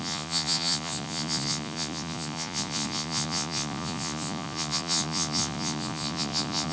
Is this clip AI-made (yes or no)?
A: yes